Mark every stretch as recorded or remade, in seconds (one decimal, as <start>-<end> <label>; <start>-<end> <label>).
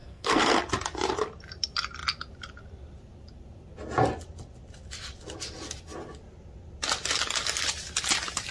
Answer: 0.0-0.6 remade; 0.6-8.5 recorded